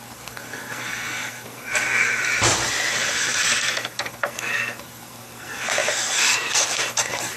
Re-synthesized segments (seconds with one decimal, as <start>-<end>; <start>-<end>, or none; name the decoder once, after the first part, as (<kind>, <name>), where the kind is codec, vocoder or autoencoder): 0.0-2.2 (codec, SNAC); 2.9-7.4